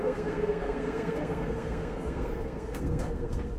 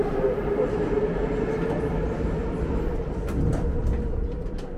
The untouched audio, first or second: second